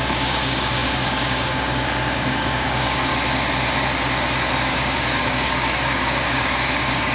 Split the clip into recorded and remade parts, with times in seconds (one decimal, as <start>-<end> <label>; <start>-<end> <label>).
0.0-3.1 remade; 3.1-4.7 recorded; 4.7-7.1 remade